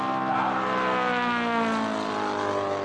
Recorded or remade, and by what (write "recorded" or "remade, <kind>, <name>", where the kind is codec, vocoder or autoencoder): recorded